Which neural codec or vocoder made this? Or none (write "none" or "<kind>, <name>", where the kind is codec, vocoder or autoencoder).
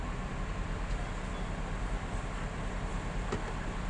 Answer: none